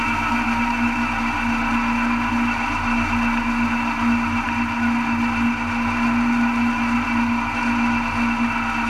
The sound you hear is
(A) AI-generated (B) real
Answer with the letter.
B